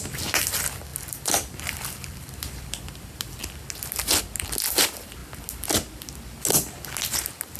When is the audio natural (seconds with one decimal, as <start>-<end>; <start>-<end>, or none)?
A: 0.0-0.9; 3.0-7.6